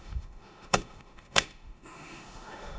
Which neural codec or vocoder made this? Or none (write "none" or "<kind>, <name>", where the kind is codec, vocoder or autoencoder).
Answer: autoencoder, DAC-VAE